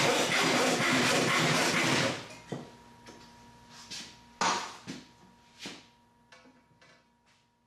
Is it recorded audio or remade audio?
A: recorded